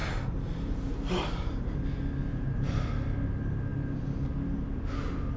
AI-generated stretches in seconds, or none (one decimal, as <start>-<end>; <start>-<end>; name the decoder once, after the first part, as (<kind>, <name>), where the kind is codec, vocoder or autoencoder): 0.0-1.8 (vocoder, BigVGAN v2); 2.3-2.9